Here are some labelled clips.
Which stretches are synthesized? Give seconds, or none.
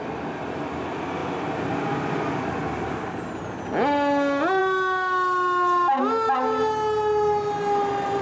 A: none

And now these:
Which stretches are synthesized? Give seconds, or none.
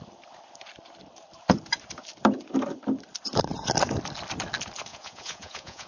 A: 4.9-5.9 (vocoder, Vocos)